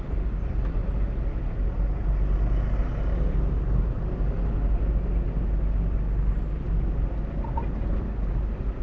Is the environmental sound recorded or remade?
recorded